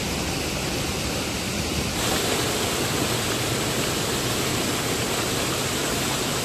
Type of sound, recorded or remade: recorded